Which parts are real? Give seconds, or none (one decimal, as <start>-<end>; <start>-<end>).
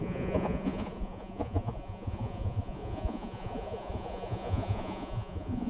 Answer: none